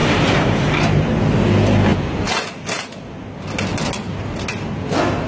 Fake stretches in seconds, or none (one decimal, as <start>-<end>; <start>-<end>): 0.0-1.2